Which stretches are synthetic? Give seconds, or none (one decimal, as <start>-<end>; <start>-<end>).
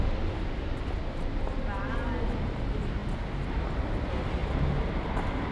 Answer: none